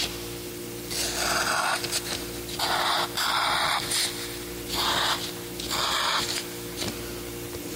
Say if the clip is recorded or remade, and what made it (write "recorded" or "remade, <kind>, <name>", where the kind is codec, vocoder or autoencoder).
recorded